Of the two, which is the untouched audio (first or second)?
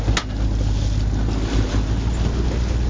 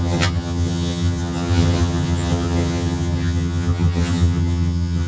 first